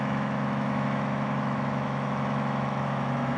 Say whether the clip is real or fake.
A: fake